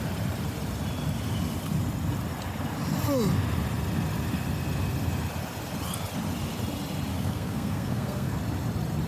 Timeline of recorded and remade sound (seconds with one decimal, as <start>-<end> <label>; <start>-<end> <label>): 0.0-7.1 recorded; 7.1-8.4 remade; 8.4-9.1 recorded